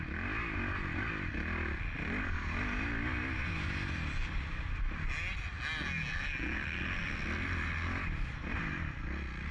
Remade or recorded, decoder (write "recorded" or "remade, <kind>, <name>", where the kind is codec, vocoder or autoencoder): recorded